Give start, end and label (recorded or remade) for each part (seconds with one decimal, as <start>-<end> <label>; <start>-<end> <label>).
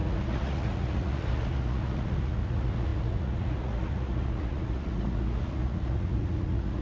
0.0-6.8 remade